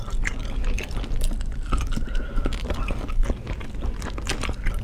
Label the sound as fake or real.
real